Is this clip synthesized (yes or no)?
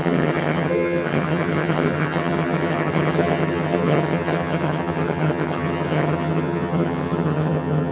yes